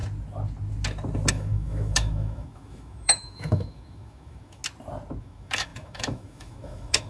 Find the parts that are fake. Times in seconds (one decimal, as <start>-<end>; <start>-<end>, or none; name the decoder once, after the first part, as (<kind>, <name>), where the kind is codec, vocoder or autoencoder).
1.3-4.6 (autoencoder, DAC-VAE); 5.2-7.1